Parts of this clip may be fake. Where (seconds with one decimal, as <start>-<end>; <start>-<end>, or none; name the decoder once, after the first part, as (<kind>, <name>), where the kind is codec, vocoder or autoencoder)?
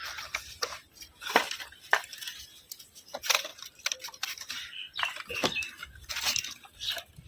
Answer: 3.5-6.1 (vocoder, BigVGAN v2)